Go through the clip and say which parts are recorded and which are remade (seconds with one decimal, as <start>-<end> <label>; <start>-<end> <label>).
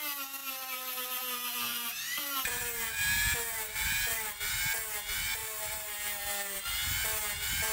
0.0-0.4 recorded; 0.4-4.3 remade; 4.3-5.4 recorded; 5.4-6.6 remade; 6.6-7.7 recorded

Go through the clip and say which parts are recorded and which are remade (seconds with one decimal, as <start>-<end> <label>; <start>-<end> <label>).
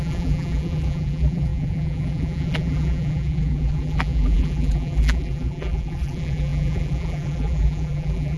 0.0-8.4 remade